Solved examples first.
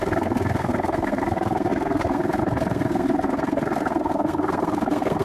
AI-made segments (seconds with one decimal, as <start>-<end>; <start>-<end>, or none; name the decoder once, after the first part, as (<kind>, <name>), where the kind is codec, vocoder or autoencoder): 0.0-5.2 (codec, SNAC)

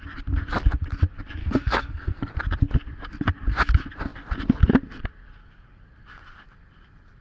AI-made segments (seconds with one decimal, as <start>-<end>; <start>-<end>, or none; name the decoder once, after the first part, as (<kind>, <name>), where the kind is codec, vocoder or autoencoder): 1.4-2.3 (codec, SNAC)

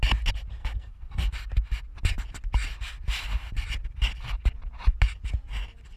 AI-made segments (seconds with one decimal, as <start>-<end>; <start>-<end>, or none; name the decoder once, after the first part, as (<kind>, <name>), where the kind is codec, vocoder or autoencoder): 0.6-1.3 (codec, SNAC)

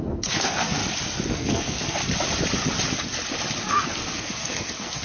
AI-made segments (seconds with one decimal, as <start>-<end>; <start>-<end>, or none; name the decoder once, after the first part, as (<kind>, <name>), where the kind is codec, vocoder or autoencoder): 0.0-0.8 (codec, SNAC); 1.3-2.0; 3.7-5.0

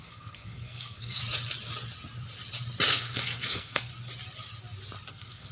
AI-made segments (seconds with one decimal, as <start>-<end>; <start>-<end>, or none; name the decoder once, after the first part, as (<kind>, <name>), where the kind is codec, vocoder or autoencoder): 0.0-1.2 (codec, SNAC); 2.9-3.9; 5.1-5.5